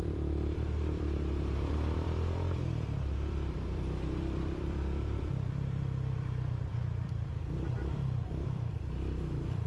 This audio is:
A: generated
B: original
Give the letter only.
A